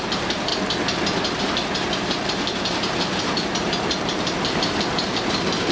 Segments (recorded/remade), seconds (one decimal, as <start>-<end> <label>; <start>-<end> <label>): 0.0-0.5 remade; 0.5-1.4 recorded; 1.4-5.7 remade